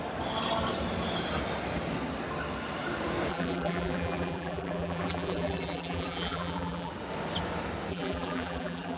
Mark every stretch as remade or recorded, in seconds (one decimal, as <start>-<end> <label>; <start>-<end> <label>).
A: 0.0-3.3 recorded; 3.3-6.9 remade; 6.9-7.9 recorded; 7.9-9.0 remade